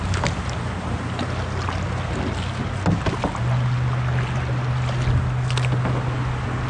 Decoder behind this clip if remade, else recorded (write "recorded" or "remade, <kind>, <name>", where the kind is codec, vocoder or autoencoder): recorded